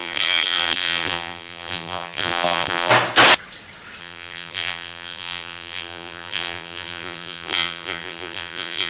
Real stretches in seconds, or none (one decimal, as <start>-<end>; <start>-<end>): 2.9-4.0